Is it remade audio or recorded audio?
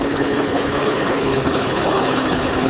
remade